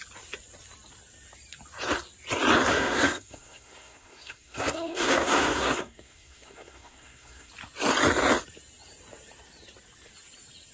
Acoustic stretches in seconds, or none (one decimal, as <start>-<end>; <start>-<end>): 0.0-2.7; 7.5-10.7